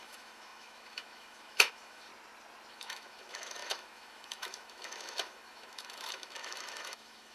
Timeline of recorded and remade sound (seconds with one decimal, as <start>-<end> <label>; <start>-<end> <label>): 0.0-2.1 remade; 2.1-2.7 recorded; 2.7-7.3 remade